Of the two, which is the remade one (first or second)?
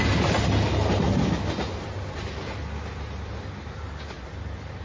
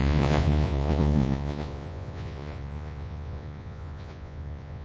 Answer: second